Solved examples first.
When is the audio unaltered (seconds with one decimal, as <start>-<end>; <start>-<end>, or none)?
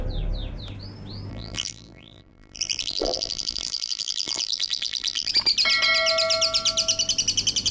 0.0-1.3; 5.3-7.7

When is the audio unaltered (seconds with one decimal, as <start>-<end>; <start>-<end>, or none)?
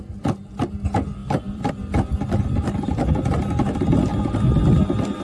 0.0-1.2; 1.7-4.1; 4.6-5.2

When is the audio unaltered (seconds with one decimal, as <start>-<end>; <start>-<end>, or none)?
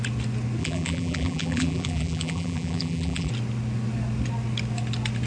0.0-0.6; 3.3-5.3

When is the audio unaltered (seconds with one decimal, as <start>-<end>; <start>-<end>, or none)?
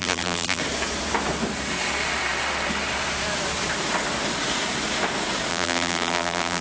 0.6-5.5